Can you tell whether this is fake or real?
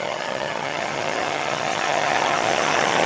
fake